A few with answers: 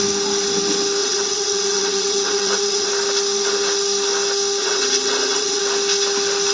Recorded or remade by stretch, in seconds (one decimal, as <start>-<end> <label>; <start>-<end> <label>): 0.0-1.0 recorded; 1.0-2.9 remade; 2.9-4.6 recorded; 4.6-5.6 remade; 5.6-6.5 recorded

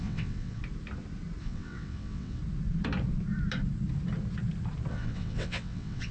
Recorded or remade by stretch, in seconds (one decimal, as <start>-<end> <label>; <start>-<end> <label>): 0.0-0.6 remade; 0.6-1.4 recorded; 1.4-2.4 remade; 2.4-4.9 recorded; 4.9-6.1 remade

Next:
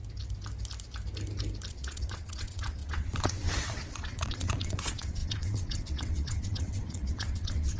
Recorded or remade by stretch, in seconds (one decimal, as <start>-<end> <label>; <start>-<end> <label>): 0.0-1.7 recorded; 1.7-7.8 remade

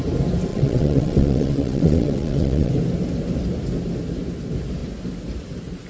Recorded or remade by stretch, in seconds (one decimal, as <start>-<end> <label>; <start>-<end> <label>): 0.0-0.5 recorded; 0.5-2.7 remade; 2.7-5.9 recorded

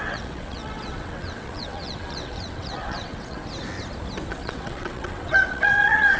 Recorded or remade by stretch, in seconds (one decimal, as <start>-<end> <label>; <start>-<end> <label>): 0.0-3.4 remade; 3.4-4.3 recorded; 4.3-6.2 remade

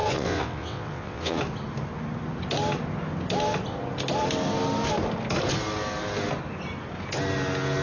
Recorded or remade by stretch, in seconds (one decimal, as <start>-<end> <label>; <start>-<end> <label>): 0.0-1.4 remade; 1.4-7.8 recorded